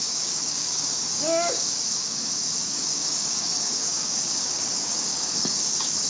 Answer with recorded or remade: remade